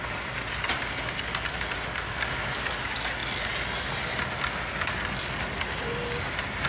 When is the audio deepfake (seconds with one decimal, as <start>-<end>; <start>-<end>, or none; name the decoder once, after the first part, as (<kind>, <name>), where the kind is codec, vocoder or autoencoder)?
none